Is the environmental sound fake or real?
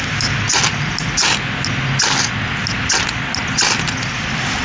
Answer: real